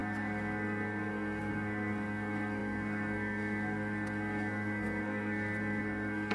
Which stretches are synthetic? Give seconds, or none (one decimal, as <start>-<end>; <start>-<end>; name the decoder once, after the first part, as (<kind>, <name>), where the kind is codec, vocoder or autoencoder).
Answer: 0.0-6.3 (codec, SNAC)